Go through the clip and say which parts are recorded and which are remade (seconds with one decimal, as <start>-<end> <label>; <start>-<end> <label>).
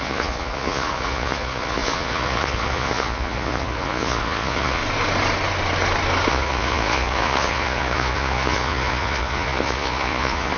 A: 0.0-4.8 remade; 4.8-6.3 recorded; 6.3-10.6 remade